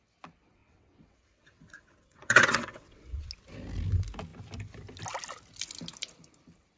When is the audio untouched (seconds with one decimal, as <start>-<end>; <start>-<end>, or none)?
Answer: 0.0-0.6; 3.3-6.8